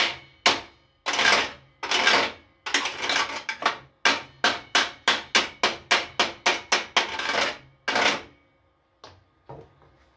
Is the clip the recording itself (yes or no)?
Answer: yes